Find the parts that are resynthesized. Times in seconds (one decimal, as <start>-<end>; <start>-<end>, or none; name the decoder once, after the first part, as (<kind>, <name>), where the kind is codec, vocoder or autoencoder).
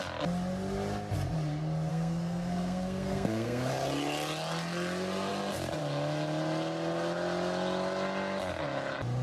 1.9-3.7 (codec, SNAC)